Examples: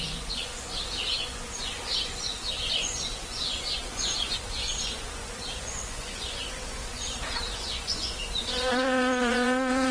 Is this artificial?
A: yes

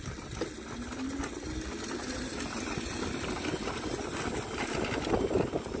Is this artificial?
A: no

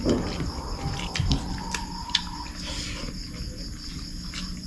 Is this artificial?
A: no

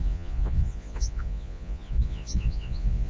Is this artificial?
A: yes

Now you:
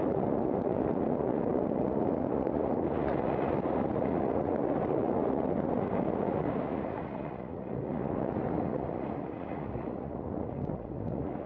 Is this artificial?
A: yes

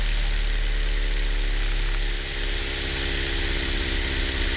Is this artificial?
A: no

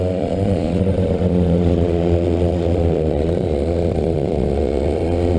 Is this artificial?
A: yes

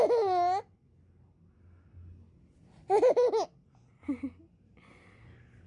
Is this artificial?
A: no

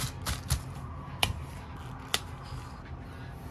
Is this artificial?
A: no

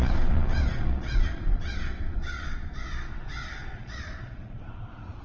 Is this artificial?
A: yes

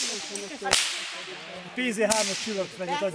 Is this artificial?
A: no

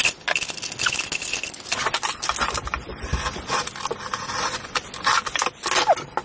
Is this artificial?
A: no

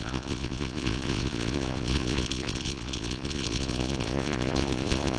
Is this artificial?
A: yes